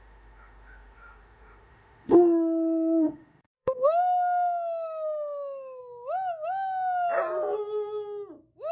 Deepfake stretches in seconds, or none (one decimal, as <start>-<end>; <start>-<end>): 0.0-5.8